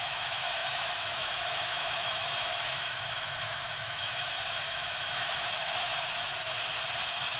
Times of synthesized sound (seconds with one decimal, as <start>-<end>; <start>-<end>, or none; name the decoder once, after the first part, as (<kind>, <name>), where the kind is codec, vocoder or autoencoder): 0.0-5.9 (autoencoder, DAC-VAE); 7.0-7.4